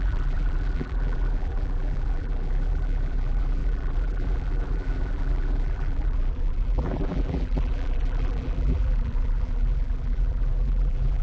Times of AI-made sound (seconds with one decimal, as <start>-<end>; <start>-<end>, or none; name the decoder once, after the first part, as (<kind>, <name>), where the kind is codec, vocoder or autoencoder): 0.0-11.2 (vocoder, BigVGAN v2)